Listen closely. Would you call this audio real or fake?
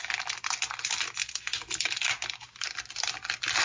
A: real